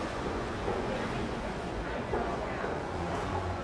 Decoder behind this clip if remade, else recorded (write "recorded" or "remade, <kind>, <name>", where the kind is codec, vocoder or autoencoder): remade, vocoder, Vocos